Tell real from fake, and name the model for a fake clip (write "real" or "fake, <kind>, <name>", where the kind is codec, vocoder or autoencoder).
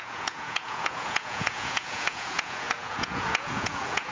fake, vocoder, Vocos